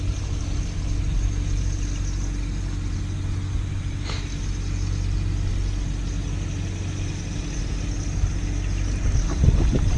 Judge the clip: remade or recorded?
recorded